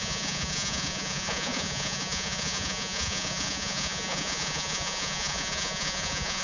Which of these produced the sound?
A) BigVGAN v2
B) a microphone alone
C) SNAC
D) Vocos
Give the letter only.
D